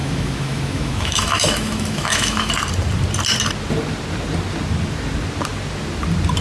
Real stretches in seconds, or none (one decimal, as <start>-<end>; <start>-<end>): 2.5-6.4